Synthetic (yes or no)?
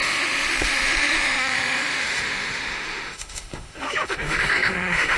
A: yes